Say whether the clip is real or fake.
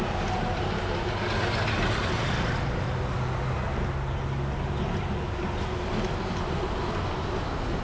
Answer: real